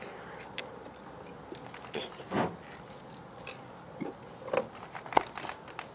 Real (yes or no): yes